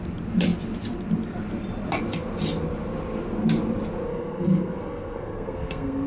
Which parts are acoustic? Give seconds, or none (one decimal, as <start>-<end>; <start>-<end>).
0.0-4.1